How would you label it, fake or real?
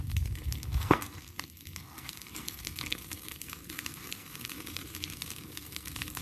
fake